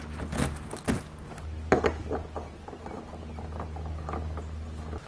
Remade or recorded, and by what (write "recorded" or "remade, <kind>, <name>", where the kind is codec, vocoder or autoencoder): recorded